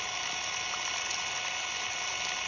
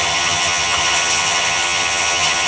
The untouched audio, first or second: first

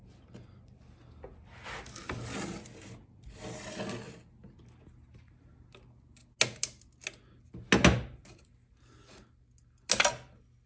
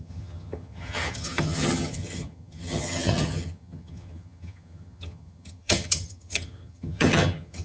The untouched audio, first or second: first